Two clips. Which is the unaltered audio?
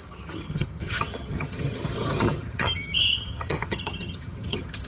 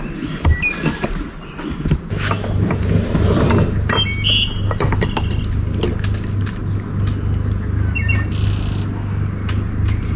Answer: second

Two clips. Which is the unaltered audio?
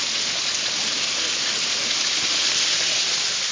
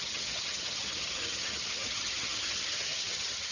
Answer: first